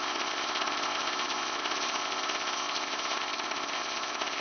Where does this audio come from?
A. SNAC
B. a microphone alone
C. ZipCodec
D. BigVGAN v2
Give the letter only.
C